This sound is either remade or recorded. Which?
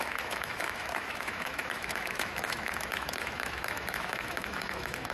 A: remade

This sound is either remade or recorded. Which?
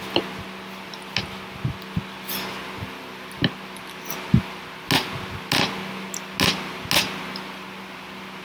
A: recorded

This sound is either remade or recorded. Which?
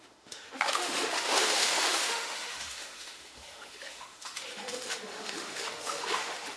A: remade